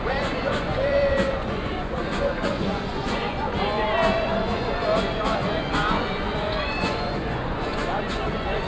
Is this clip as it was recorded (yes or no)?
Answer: no